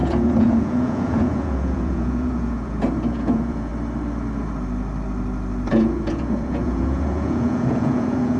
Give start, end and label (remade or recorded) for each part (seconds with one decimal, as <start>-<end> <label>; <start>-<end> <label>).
0.0-3.7 remade; 3.7-5.7 recorded; 5.7-8.4 remade